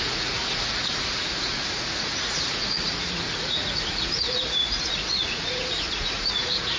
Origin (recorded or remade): remade